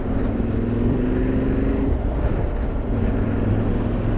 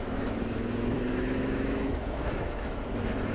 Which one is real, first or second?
first